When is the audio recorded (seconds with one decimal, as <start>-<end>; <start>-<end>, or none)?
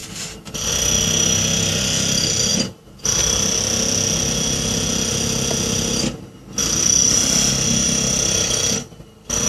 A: 0.7-2.5; 3.2-9.5